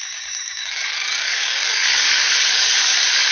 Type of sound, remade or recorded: remade